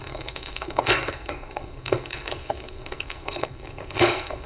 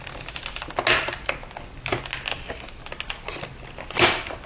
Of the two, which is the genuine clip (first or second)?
second